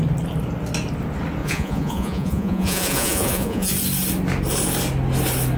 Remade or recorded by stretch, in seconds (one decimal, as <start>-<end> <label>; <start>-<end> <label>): 0.0-1.4 recorded; 1.4-3.7 remade; 3.7-5.6 recorded